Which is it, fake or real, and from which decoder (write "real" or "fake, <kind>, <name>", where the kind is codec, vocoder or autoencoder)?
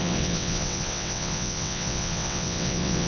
fake, vocoder, WaveNeXt